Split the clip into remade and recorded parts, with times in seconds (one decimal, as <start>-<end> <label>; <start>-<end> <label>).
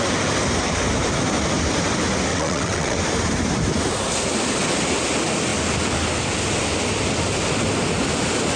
0.0-2.3 recorded; 2.3-3.0 remade; 3.0-8.6 recorded